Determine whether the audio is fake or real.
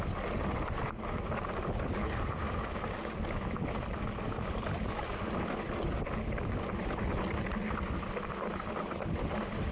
real